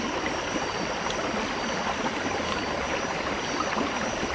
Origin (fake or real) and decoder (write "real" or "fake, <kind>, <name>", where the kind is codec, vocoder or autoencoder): real